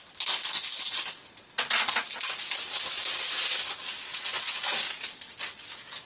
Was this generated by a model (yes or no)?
no